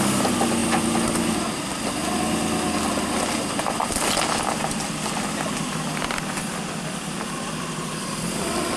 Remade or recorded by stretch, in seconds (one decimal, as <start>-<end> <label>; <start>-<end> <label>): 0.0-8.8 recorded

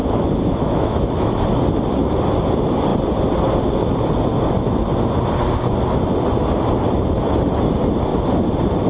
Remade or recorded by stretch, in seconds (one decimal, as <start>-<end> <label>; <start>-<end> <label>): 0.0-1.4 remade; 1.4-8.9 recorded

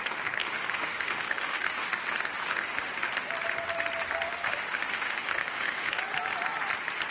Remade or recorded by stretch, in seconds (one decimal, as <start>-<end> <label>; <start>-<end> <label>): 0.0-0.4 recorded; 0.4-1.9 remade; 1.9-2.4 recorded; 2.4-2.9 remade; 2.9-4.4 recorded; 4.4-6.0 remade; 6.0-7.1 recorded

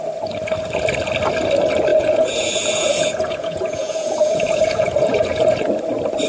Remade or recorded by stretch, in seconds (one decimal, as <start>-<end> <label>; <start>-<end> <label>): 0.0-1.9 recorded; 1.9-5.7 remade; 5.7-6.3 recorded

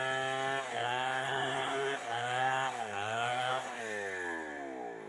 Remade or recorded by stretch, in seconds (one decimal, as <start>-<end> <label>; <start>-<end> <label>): 0.0-0.7 recorded; 0.7-3.8 remade; 3.8-5.1 recorded